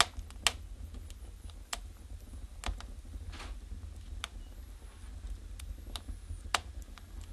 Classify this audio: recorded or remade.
recorded